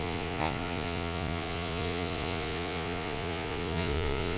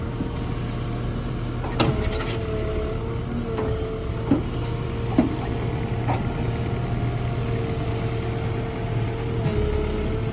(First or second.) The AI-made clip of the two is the first